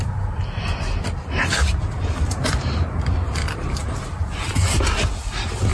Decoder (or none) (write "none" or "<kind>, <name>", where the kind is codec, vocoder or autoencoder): none